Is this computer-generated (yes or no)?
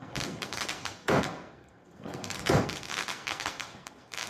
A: yes